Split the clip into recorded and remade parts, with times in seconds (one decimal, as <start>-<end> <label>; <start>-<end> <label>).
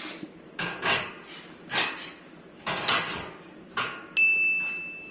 0.0-5.1 recorded